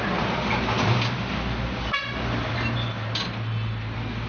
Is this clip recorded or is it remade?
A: recorded